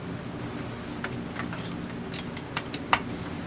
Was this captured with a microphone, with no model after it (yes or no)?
yes